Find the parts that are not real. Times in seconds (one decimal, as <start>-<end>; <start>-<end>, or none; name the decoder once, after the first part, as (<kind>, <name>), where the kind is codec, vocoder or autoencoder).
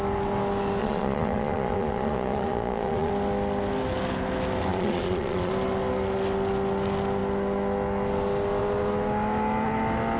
0.8-3.1 (vocoder, Vocos); 4.7-5.5